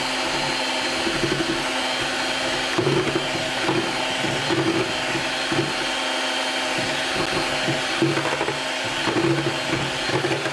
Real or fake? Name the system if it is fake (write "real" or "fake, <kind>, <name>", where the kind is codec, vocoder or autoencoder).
real